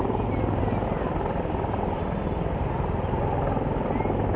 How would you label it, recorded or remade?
recorded